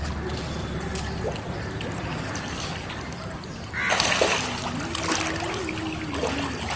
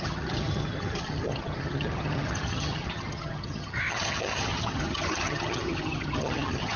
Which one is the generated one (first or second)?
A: second